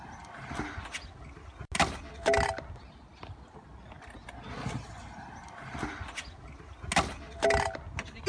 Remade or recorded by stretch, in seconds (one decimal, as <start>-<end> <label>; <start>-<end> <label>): 0.0-8.3 recorded